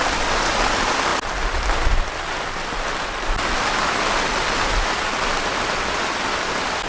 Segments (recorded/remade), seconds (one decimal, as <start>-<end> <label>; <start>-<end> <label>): 0.0-6.9 recorded